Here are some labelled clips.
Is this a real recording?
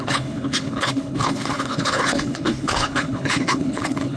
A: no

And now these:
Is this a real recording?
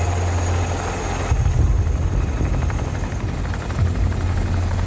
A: yes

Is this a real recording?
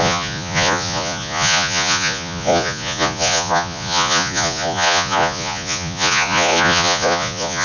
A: no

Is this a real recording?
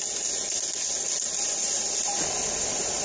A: yes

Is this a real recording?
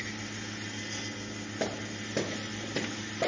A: yes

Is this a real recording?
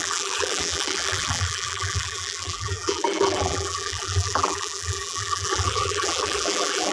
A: no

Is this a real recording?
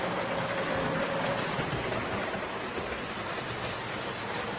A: yes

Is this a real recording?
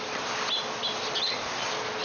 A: yes